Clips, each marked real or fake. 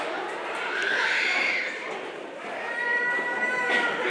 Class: fake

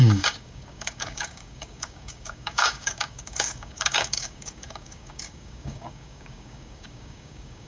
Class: fake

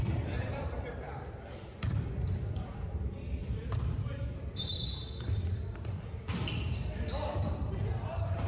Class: fake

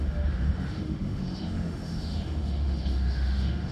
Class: fake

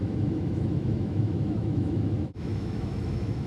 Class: fake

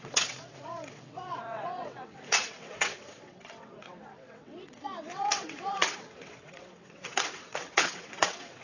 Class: fake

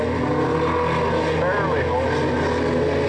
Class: real